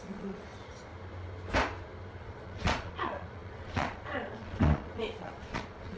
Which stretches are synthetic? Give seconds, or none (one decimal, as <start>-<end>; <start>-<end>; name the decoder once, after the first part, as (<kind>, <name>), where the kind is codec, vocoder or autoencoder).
0.0-0.9 (vocoder, Vocos); 2.2-6.0